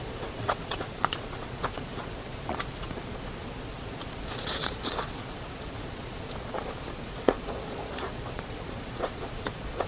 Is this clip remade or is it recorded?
remade